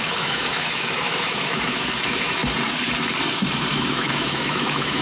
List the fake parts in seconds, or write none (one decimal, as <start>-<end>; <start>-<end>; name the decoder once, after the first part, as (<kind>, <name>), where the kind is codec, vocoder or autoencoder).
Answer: 0.0-2.4 (autoencoder, DAC-VAE); 3.7-5.0